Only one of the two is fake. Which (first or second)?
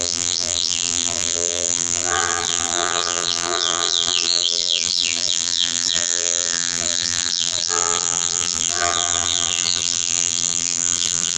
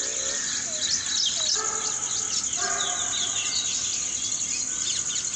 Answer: first